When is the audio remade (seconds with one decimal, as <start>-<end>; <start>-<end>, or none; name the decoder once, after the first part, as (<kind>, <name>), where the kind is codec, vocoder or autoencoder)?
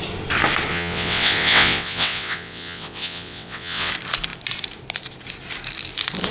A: 0.7-3.9 (vocoder, WaveNeXt)